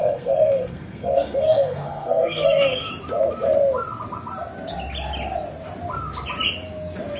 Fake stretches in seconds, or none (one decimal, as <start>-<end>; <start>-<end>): 0.0-2.9